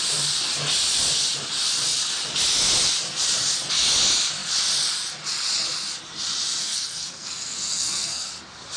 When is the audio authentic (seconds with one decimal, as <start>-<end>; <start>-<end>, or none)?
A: 0.0-6.6; 8.3-8.8